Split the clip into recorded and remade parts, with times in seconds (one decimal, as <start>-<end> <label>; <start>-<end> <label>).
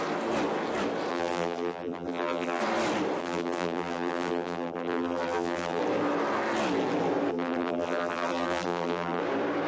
0.0-1.1 recorded; 1.1-2.6 remade; 2.6-3.2 recorded; 3.2-5.8 remade; 5.8-7.3 recorded; 7.3-9.2 remade; 9.2-9.7 recorded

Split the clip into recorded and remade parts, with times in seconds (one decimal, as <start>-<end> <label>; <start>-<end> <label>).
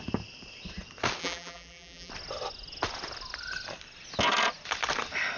0.0-1.2 recorded; 1.2-2.1 remade; 2.1-5.4 recorded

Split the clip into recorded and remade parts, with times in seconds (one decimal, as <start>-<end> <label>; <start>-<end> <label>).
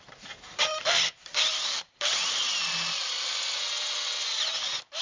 0.0-2.4 remade; 2.4-5.0 recorded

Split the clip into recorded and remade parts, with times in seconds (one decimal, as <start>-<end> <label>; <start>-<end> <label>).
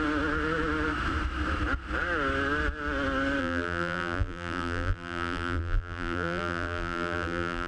0.0-3.4 recorded; 3.4-7.7 remade